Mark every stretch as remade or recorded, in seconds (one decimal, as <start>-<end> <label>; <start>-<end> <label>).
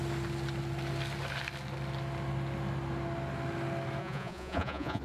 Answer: 0.0-4.0 recorded; 4.0-5.0 remade